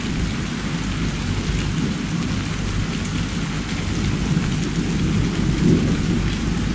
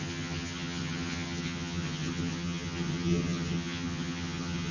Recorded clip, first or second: first